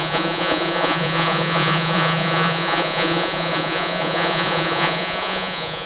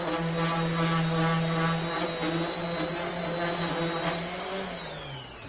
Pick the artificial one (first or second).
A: first